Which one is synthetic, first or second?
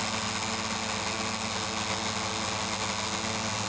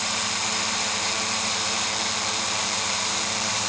second